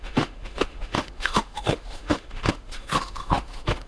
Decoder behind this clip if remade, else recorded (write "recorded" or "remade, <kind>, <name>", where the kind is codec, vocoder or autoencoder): remade, autoencoder, DAC-VAE